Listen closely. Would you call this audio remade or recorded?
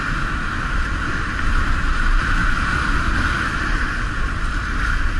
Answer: recorded